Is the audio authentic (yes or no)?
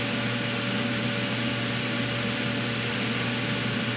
yes